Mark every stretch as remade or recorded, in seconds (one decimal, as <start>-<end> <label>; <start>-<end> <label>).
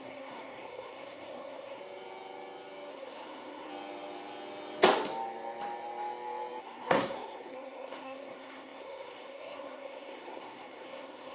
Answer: 0.0-1.8 remade; 1.8-2.9 recorded; 2.9-3.7 remade; 3.7-6.6 recorded; 6.6-11.3 remade